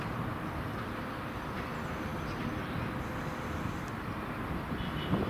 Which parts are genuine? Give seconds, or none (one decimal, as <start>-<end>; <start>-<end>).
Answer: 0.0-5.3